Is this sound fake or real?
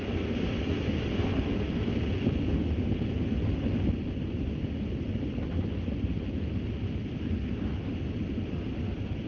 real